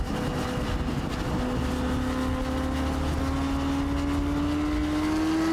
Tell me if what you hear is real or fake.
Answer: real